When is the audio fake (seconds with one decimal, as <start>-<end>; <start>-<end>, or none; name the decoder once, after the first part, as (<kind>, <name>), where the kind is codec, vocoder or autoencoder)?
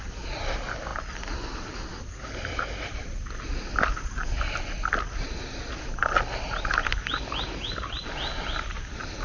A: none